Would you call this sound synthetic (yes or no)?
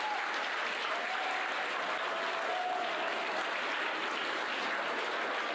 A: no